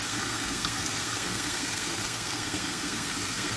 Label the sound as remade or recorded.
remade